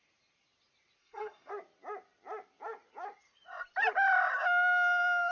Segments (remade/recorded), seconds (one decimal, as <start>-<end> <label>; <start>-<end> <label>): 0.0-1.0 recorded; 1.0-1.5 remade; 1.5-5.3 recorded